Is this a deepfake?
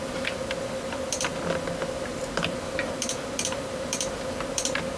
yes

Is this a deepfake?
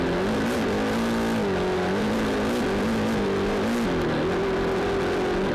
no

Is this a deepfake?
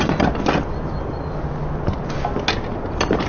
no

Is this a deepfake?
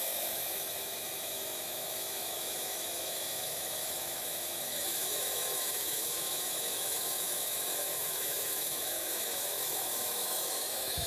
yes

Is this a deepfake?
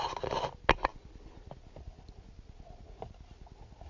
no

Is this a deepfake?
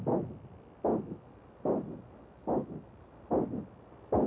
no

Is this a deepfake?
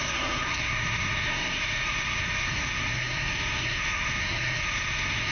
yes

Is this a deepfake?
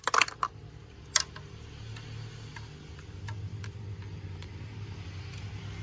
no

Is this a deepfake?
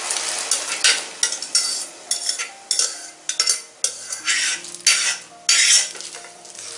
no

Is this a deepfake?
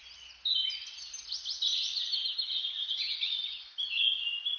no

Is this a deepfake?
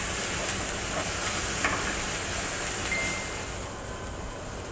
no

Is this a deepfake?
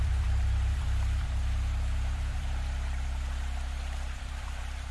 yes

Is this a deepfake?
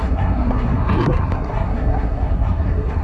yes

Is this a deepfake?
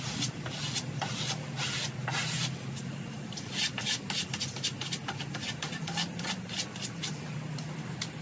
no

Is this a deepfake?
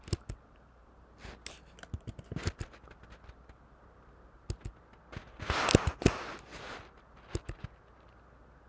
no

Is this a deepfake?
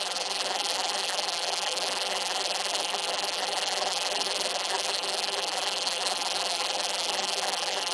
yes